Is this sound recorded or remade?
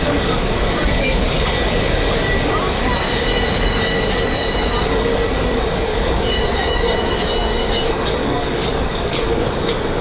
remade